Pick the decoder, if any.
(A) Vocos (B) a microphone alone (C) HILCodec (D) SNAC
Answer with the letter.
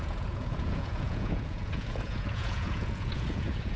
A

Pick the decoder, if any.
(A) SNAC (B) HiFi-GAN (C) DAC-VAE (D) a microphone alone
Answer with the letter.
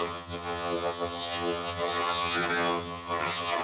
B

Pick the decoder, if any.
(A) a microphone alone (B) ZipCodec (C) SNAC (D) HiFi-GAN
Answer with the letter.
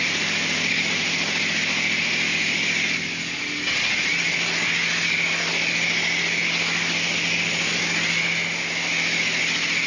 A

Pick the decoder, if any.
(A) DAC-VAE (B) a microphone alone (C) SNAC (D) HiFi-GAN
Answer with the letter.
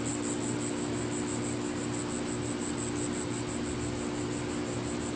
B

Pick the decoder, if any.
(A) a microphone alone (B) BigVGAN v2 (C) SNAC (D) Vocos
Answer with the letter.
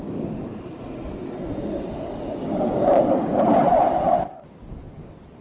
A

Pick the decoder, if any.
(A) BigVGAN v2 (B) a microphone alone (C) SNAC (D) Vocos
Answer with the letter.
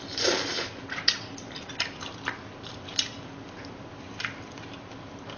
B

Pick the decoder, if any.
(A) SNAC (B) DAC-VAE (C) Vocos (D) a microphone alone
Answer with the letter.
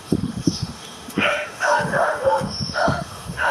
B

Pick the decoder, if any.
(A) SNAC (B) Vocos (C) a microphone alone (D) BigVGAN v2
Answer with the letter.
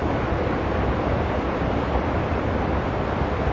D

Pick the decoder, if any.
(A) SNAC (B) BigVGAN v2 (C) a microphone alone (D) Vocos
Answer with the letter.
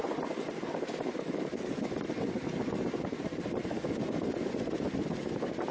C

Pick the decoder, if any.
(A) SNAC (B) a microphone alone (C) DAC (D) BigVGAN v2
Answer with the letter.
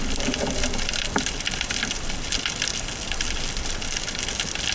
B